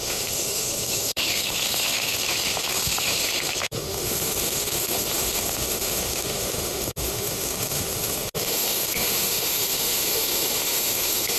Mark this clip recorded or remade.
remade